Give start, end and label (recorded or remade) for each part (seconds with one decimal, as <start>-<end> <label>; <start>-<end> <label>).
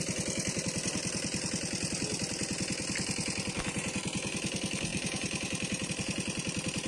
0.0-4.9 recorded; 4.9-5.9 remade; 5.9-6.9 recorded